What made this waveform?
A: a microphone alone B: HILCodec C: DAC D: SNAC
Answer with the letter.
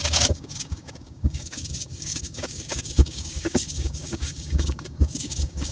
C